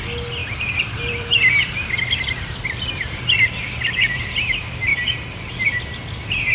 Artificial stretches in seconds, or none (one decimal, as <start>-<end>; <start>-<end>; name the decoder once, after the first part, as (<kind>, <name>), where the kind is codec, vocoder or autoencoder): 0.4-4.3 (vocoder, BigVGAN v2)